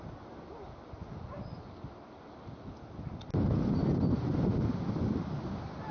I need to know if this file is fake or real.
real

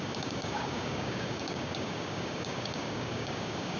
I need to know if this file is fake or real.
fake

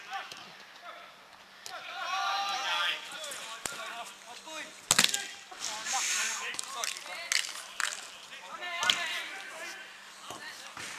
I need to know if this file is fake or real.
real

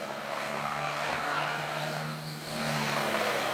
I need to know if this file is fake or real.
fake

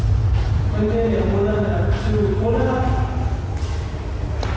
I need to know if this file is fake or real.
real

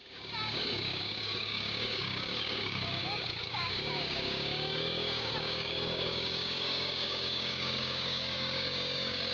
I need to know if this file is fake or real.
fake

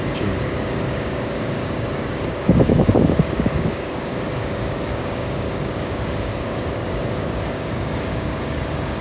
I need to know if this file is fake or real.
fake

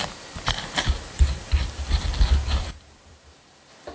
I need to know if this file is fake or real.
real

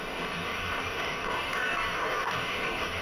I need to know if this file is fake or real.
fake